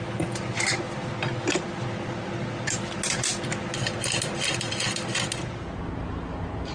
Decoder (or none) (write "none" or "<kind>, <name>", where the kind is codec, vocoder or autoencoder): none